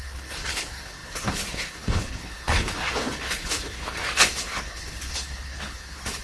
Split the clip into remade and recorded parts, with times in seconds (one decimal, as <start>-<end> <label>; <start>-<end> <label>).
0.0-6.2 remade